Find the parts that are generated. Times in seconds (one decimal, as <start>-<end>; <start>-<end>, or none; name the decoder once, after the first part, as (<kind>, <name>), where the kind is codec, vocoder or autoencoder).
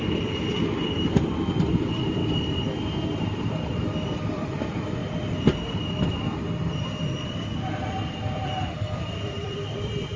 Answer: 0.0-2.2 (vocoder, BigVGAN v2); 3.2-5.0; 9.2-10.2